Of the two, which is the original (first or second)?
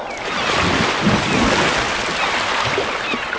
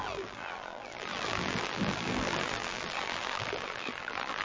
first